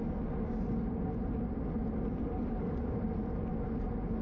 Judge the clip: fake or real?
real